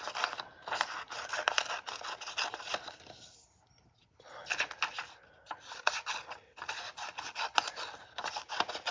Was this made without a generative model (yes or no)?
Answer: yes